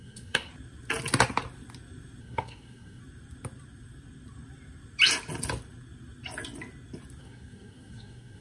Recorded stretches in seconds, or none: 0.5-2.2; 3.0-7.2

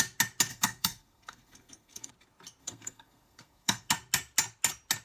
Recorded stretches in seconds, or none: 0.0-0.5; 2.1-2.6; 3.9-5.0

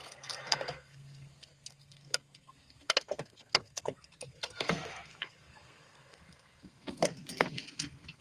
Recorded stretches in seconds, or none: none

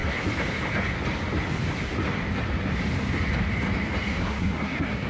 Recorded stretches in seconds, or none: 0.0-4.1

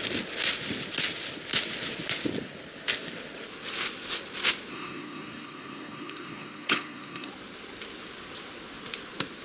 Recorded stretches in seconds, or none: 0.0-4.7; 7.3-9.4